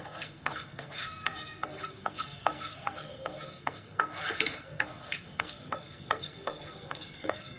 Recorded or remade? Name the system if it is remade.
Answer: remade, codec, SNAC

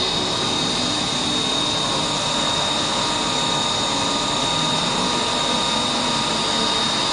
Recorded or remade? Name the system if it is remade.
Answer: recorded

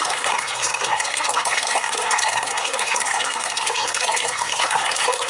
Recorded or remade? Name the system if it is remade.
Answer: remade, codec, SNAC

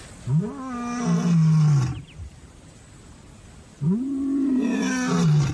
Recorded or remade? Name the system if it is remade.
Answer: recorded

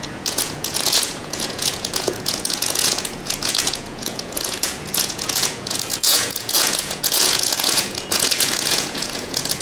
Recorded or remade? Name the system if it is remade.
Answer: remade, vocoder, Vocos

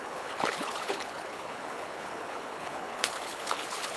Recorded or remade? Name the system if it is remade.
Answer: remade, codec, HILCodec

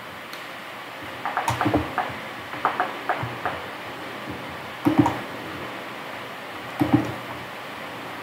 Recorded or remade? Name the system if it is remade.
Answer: recorded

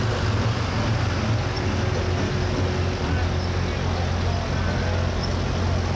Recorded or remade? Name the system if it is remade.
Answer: recorded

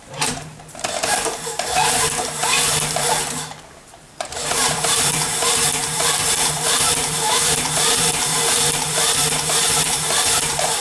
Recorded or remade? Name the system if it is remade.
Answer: remade, vocoder, BigVGAN v2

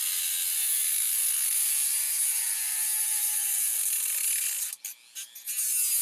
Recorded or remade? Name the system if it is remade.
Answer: recorded